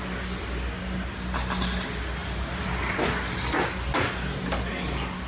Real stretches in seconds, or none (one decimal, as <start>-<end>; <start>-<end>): 0.0-5.3